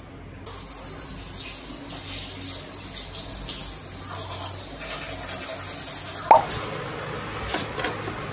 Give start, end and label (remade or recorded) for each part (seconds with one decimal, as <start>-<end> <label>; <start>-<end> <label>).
0.0-8.3 recorded